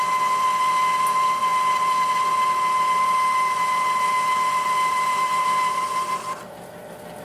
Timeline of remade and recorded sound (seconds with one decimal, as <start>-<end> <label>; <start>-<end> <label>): 0.0-7.2 recorded